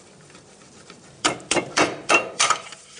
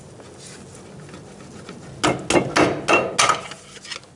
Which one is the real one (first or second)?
second